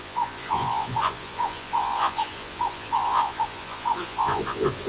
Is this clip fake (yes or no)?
yes